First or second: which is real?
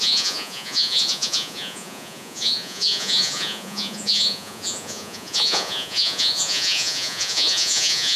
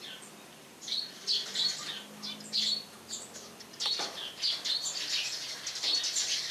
second